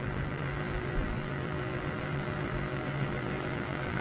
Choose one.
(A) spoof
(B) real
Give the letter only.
A